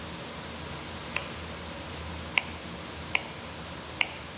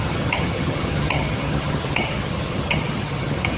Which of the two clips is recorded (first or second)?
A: first